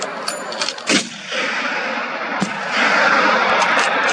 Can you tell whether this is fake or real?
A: real